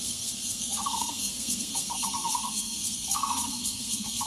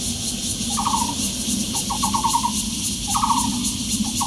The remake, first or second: first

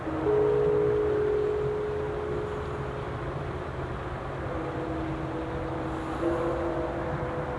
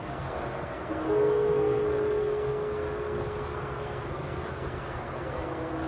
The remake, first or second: second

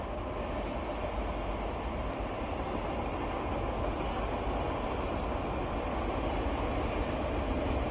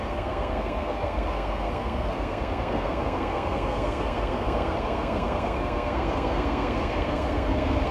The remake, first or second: second